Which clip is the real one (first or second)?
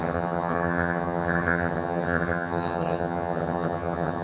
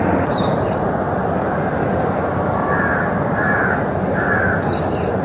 second